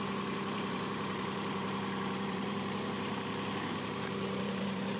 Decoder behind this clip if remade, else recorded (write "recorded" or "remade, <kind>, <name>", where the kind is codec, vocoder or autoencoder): remade, vocoder, BigVGAN v2